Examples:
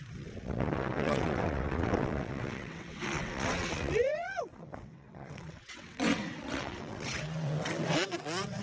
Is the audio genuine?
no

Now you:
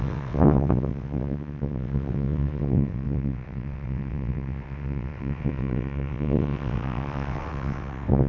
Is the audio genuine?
no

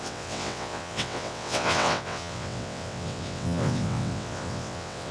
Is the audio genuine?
no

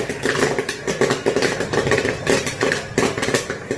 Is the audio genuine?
yes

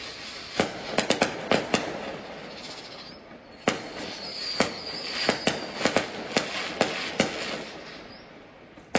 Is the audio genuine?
yes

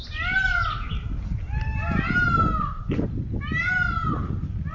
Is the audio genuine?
yes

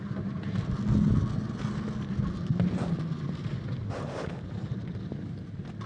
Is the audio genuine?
yes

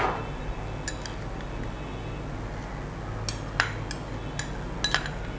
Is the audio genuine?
yes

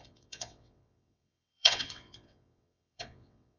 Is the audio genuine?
no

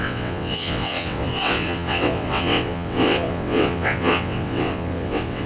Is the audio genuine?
no